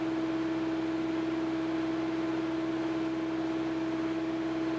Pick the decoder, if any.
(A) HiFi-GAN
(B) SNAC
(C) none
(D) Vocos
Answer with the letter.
C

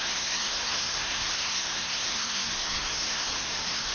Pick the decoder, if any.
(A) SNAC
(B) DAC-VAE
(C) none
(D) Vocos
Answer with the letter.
A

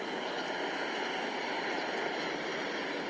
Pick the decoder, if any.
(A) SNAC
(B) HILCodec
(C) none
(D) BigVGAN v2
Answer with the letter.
C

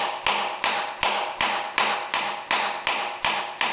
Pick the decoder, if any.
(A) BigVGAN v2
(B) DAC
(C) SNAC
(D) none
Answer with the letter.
D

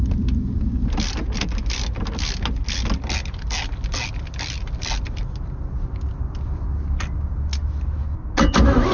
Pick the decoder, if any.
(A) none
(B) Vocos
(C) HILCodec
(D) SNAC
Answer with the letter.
A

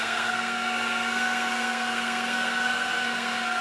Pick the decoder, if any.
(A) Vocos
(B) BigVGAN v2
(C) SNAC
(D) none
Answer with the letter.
C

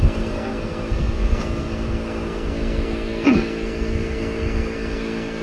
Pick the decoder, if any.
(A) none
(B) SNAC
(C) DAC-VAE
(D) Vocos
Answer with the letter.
B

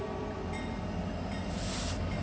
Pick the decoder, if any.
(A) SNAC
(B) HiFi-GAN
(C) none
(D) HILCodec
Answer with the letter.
C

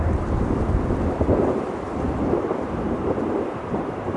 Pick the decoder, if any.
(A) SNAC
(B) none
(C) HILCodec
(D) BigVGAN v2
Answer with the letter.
D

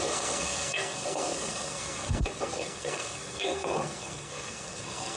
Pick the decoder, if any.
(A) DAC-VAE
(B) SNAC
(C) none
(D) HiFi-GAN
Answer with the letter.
B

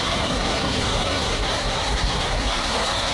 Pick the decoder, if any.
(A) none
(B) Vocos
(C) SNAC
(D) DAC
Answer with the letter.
C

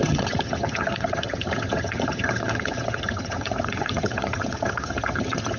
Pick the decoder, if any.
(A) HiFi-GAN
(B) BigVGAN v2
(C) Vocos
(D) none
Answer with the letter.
A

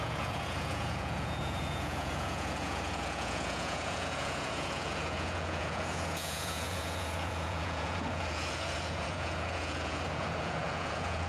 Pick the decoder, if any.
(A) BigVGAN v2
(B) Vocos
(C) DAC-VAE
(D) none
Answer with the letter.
B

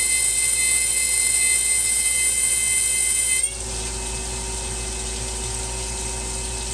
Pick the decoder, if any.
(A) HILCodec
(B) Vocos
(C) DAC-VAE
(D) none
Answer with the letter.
D